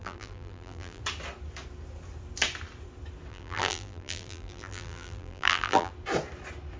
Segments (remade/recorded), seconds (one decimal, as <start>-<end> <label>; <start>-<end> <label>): 0.0-1.0 remade; 1.0-3.3 recorded; 3.3-5.9 remade; 5.9-6.8 recorded